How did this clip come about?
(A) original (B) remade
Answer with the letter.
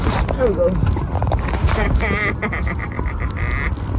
A